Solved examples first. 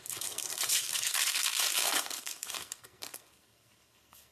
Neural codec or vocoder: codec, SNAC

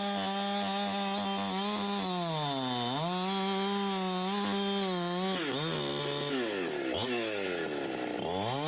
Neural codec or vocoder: none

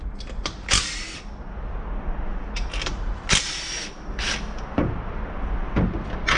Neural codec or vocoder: none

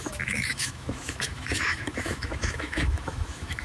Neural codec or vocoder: autoencoder, DAC-VAE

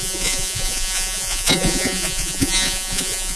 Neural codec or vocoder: vocoder, Vocos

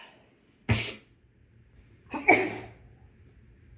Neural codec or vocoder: none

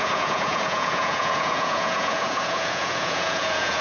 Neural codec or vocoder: vocoder, Vocos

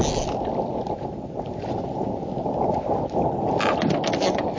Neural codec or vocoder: none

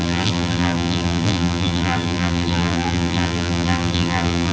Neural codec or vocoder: vocoder, BigVGAN v2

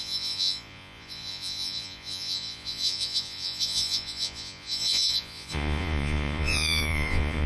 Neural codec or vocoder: vocoder, Vocos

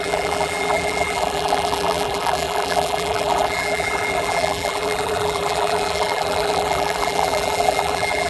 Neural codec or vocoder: vocoder, BigVGAN v2